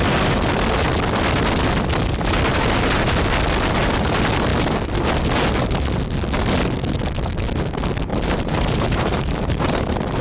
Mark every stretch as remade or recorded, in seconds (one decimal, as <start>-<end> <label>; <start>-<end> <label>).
0.0-8.1 recorded; 8.1-10.2 remade